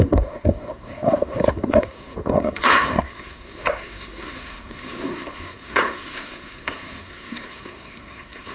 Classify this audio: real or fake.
fake